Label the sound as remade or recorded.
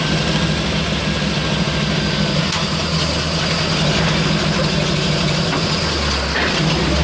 recorded